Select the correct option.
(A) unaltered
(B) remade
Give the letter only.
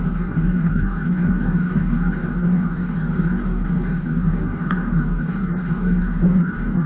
B